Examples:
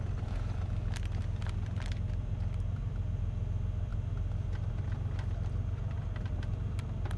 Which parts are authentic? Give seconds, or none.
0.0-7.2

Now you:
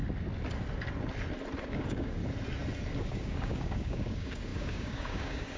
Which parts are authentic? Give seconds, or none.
0.0-1.6; 2.2-3.0